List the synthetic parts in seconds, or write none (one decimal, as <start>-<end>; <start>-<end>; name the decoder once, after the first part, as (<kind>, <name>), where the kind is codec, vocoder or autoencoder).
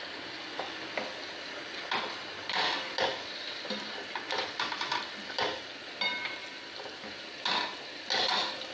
3.1-4.9 (vocoder, BigVGAN v2)